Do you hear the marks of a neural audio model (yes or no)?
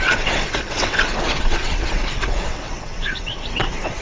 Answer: yes